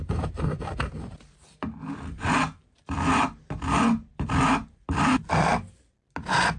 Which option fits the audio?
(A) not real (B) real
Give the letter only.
B